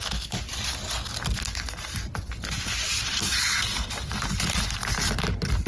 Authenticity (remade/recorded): recorded